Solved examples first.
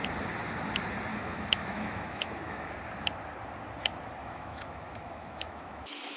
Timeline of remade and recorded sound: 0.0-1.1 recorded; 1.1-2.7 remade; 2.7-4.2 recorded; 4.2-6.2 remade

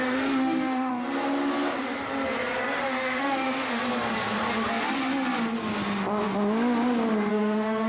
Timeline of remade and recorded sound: 0.0-0.9 remade; 0.9-2.8 recorded; 2.8-3.8 remade; 3.8-7.3 recorded; 7.3-7.9 remade

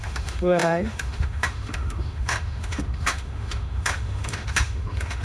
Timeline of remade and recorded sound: 0.0-5.2 remade

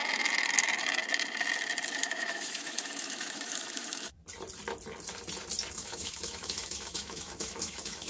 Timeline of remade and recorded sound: 0.0-2.0 recorded; 2.0-4.1 remade; 4.1-5.7 recorded; 5.7-8.1 remade

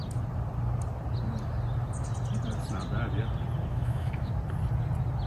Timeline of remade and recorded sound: 0.0-3.7 recorded; 3.7-4.3 remade; 4.3-5.3 recorded